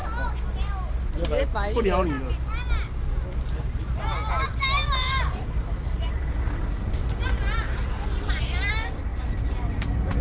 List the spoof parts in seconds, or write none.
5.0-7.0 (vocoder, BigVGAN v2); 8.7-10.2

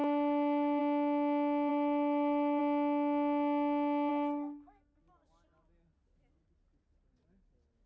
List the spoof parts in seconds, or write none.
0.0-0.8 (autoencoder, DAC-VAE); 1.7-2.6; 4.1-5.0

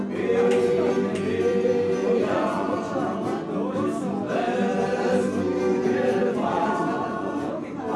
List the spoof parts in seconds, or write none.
2.0-2.9 (vocoder, Vocos); 6.2-7.5

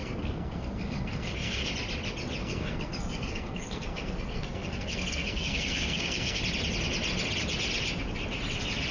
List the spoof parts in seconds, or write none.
0.0-1.7 (codec, SNAC); 2.4-6.4